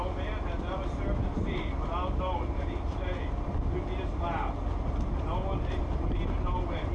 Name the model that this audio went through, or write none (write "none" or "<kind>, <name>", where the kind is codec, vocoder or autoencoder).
none